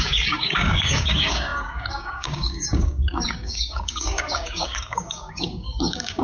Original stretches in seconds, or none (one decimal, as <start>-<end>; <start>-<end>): none